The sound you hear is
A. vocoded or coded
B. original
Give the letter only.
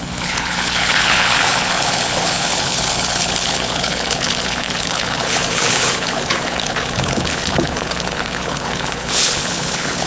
A